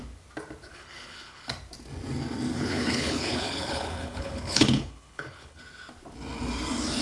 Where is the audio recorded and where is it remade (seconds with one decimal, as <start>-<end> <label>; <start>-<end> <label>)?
0.0-0.7 recorded; 0.7-1.5 remade; 1.5-2.5 recorded; 2.5-5.6 remade; 5.6-7.0 recorded